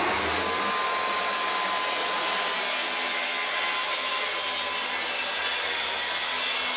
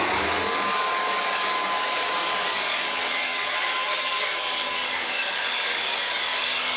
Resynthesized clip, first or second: second